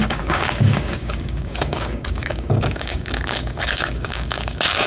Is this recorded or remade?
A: remade